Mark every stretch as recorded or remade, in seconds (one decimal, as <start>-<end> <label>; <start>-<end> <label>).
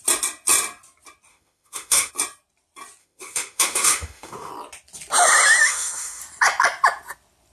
0.0-1.3 recorded; 1.3-2.1 remade; 2.1-3.0 recorded; 3.0-4.5 remade; 4.5-5.6 recorded; 5.6-6.2 remade; 6.2-7.5 recorded